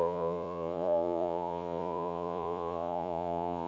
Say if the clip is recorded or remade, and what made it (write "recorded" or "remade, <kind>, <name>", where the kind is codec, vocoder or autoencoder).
remade, vocoder, Vocos